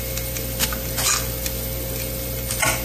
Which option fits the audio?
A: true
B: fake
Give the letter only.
A